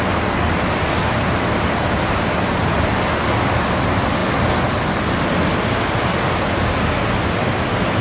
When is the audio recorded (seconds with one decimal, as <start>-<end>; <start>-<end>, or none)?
0.0-8.0